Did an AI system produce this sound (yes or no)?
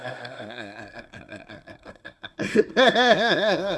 yes